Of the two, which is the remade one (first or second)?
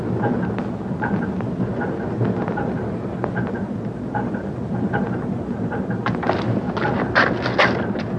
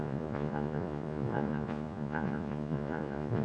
second